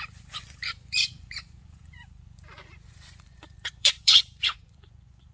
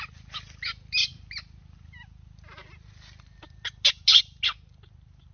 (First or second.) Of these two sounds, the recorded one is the second